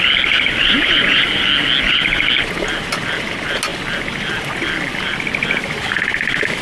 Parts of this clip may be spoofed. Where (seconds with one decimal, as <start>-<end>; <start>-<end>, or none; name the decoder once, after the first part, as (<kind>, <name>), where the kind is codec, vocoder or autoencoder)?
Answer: 0.6-1.2 (vocoder, Vocos)